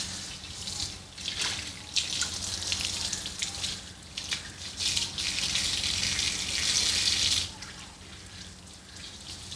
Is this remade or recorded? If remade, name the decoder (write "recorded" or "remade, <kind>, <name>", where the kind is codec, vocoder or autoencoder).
recorded